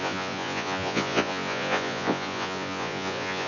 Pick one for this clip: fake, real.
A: fake